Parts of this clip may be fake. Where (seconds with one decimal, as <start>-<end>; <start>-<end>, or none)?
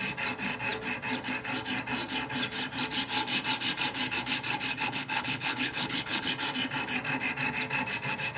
4.7-6.3